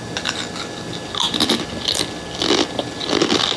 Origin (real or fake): real